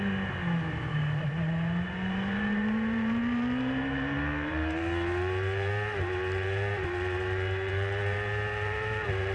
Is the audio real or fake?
fake